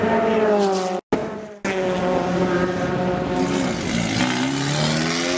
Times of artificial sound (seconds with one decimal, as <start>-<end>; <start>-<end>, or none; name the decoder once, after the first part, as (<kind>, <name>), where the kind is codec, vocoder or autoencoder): none